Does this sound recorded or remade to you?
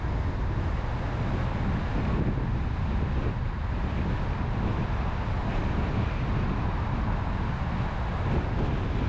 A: recorded